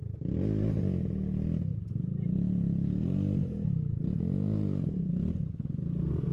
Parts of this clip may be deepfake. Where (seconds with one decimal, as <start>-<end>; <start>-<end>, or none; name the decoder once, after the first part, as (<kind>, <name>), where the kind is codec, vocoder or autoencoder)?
none